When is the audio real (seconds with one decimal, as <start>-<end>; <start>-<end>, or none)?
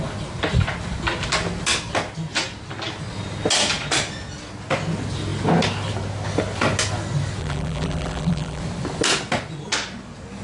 0.0-7.4; 8.6-10.4